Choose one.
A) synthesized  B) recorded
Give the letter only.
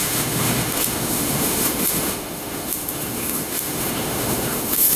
A